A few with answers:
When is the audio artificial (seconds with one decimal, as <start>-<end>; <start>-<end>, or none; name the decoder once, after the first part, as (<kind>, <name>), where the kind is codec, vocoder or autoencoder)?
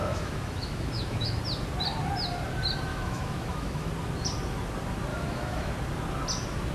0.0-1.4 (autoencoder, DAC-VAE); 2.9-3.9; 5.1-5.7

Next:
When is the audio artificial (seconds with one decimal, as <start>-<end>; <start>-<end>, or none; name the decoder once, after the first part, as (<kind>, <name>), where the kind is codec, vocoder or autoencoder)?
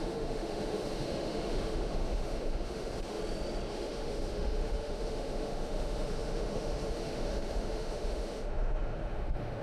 0.0-3.2 (autoencoder, DAC-VAE); 3.7-9.6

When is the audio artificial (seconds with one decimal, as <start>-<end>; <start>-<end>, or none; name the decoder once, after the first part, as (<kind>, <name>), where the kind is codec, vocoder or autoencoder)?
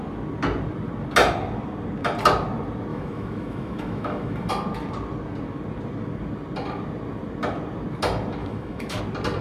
2.9-4.5 (autoencoder, DAC-VAE); 8.4-9.0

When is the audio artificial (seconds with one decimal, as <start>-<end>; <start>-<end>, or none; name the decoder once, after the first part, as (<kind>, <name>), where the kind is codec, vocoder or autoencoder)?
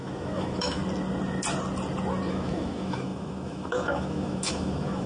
0.0-0.8 (autoencoder, DAC-VAE); 2.3-5.1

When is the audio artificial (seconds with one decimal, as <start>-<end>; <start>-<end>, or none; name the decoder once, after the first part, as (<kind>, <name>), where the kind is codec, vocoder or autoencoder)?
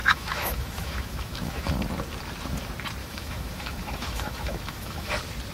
0.0-1.7 (autoencoder, DAC-VAE); 3.0-5.1